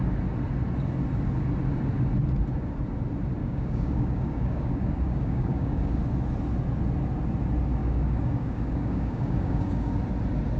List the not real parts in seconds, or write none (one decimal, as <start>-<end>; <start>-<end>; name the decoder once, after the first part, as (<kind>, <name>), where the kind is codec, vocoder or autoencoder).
3.4-6.0 (codec, DAC); 7.8-10.0